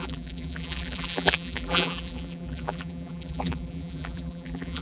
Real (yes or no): no